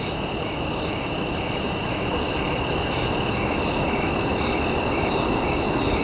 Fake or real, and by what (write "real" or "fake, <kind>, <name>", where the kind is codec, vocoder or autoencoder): fake, autoencoder, DAC-VAE